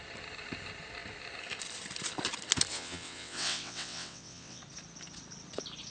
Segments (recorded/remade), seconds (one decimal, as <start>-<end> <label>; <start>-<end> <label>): 0.0-2.7 recorded; 2.7-4.6 remade; 4.6-5.9 recorded